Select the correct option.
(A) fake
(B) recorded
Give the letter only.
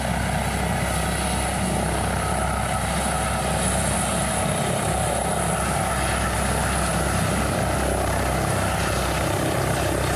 B